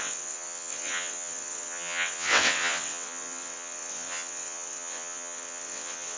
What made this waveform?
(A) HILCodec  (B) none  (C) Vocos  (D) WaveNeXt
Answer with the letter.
D